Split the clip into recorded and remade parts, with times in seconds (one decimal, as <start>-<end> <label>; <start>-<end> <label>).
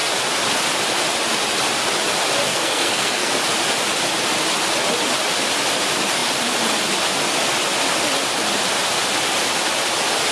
0.0-2.5 recorded; 2.5-3.3 remade; 3.3-10.3 recorded